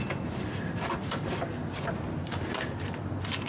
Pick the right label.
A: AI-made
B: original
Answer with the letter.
B